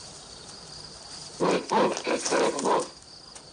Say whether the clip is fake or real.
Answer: fake